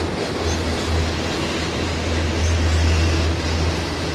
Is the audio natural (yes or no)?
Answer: yes